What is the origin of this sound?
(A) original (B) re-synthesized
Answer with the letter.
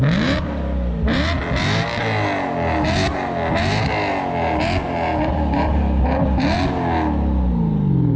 A